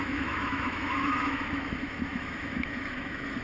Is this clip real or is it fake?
fake